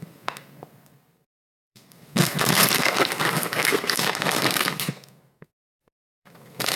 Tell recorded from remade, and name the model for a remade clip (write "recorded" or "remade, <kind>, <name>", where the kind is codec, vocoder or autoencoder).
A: remade, codec, SNAC